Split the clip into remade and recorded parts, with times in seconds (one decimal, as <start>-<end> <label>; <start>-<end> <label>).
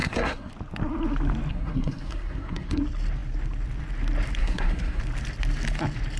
0.0-0.5 remade; 0.5-1.5 recorded; 1.5-2.8 remade; 2.8-4.4 recorded; 4.4-5.0 remade; 5.0-6.2 recorded